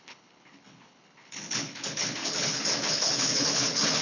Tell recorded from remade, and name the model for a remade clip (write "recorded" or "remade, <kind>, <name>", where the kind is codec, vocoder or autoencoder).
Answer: remade, codec, HILCodec